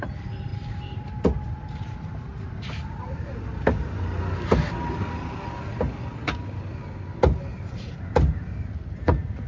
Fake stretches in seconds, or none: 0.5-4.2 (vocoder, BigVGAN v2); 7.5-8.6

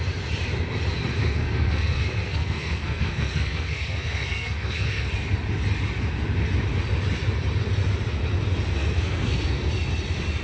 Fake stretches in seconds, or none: 1.2-5.1 (codec, SNAC); 8.7-9.7

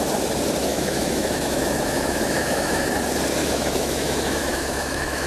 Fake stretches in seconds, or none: 0.7-2.8 (autoencoder, DAC-VAE); 3.4-5.3

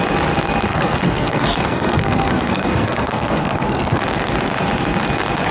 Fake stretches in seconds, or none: 0.7-4.0 (codec, SNAC)